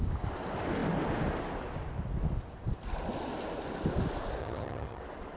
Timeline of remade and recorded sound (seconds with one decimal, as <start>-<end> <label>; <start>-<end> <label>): 0.0-4.4 recorded; 4.4-5.0 remade; 5.0-5.4 recorded

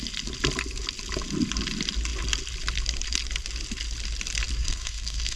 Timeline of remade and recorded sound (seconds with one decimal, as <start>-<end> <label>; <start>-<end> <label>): 0.0-4.6 recorded; 4.6-5.4 remade